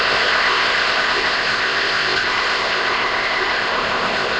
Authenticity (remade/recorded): remade